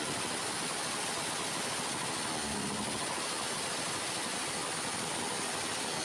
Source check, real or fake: real